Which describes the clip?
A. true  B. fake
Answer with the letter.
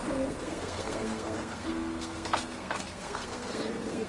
B